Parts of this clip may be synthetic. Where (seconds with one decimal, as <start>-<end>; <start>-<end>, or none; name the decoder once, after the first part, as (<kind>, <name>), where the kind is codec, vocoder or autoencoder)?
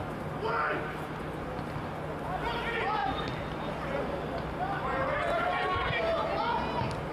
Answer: none